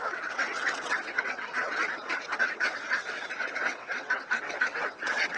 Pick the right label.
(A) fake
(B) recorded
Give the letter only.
A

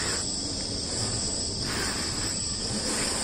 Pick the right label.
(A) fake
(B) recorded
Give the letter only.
B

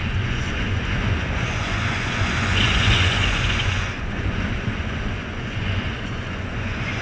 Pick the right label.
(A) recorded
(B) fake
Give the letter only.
B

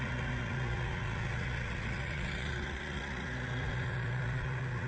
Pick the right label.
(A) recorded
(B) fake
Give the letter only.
B